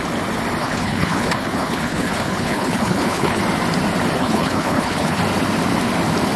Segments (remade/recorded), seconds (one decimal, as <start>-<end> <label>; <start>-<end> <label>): 0.0-0.6 recorded; 0.6-3.4 remade; 3.4-4.2 recorded; 4.2-5.2 remade; 5.2-6.4 recorded

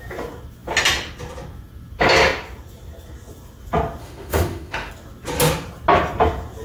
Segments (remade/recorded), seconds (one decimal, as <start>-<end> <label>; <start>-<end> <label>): 0.0-4.0 recorded; 4.0-4.9 remade; 4.9-6.6 recorded

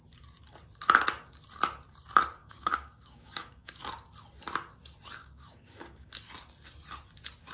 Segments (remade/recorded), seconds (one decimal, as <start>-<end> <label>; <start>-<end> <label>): 0.0-2.4 recorded; 2.4-3.8 remade; 3.8-5.2 recorded; 5.2-6.1 remade; 6.1-7.5 recorded

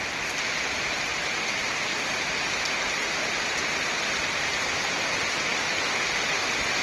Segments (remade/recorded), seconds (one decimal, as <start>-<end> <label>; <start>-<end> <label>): 0.0-6.8 recorded